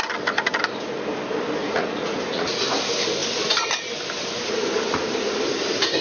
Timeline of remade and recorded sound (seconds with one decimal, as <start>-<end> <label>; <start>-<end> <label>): 0.0-1.6 recorded; 1.6-2.6 remade; 2.6-6.0 recorded